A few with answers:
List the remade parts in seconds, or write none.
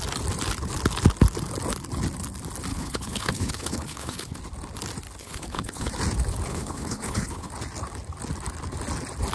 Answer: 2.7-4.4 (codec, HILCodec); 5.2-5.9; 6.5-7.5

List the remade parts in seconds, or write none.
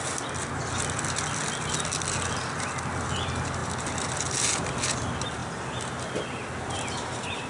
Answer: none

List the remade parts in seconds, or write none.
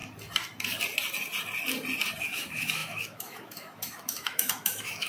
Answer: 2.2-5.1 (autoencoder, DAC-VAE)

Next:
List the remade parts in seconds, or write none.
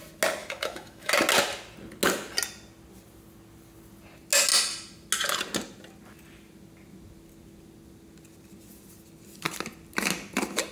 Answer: 0.4-1.1 (autoencoder, DAC-VAE)